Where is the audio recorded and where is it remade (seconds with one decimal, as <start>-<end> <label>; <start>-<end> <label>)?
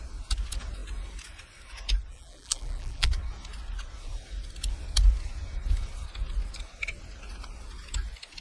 0.0-2.1 recorded; 2.1-3.1 remade; 3.1-8.4 recorded